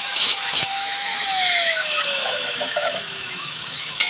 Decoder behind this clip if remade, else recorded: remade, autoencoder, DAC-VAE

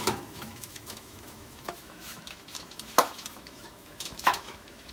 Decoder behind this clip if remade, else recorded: remade, autoencoder, DAC-VAE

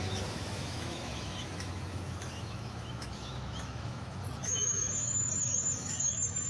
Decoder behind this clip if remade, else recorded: remade, autoencoder, DAC-VAE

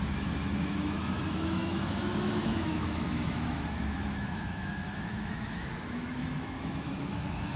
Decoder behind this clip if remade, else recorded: remade, autoencoder, DAC-VAE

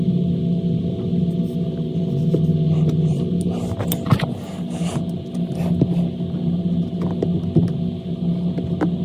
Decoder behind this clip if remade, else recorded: recorded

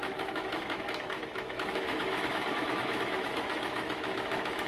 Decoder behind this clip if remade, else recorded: remade, autoencoder, DAC-VAE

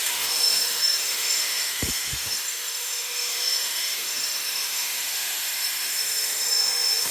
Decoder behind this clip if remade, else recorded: remade, autoencoder, DAC-VAE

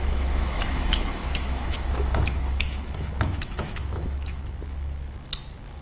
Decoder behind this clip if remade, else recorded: remade, autoencoder, DAC-VAE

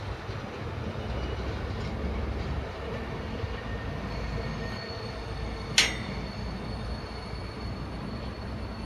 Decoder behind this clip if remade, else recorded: recorded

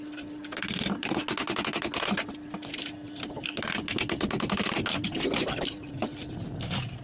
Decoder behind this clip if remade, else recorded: recorded